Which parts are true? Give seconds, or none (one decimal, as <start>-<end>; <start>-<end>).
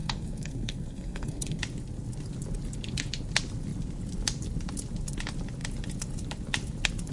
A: 1.6-7.1